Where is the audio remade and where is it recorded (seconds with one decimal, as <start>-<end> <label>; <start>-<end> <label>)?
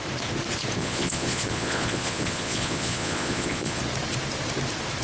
0.0-0.8 recorded; 0.8-3.8 remade; 3.8-5.0 recorded